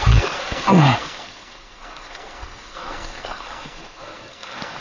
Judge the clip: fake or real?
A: fake